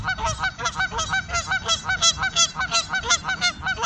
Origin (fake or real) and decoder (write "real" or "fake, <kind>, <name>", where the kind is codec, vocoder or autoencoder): real